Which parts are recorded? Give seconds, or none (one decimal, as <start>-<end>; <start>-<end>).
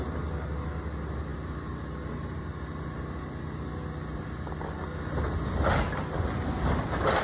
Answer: 0.0-7.2